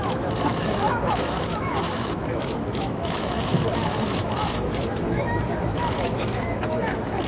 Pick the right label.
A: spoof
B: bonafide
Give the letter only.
A